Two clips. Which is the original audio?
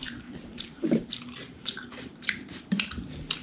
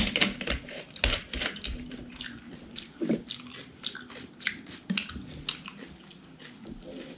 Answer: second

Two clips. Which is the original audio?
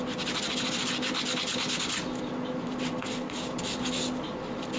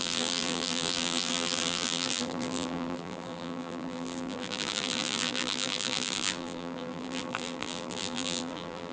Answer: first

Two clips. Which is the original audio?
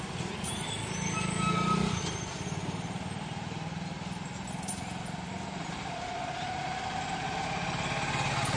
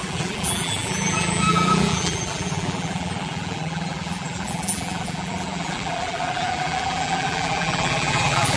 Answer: first